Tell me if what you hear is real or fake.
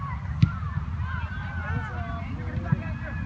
real